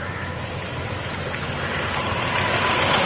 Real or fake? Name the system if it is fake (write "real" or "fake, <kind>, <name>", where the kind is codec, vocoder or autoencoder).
fake, vocoder, BigVGAN v2